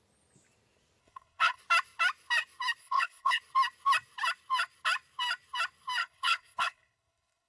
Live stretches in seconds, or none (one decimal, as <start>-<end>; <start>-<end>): 0.0-1.0; 1.6-2.8; 3.4-6.0

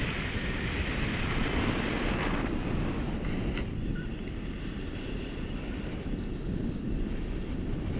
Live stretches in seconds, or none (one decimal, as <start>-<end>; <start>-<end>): 0.0-8.0

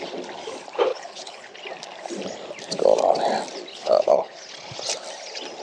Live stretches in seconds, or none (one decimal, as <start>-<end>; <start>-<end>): 0.0-0.9; 1.6-3.7; 4.5-5.6

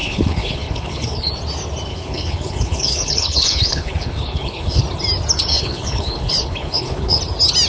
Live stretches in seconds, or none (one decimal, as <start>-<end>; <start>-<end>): 1.3-1.9; 4.8-5.5; 7.2-7.7

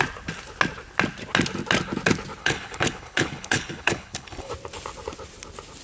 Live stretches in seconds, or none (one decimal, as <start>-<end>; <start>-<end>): 0.0-2.4; 4.5-5.8

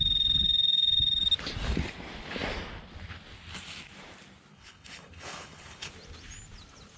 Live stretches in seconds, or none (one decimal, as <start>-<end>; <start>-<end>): 0.0-4.5; 5.9-7.0